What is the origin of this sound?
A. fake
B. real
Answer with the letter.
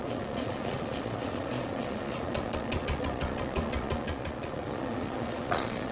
A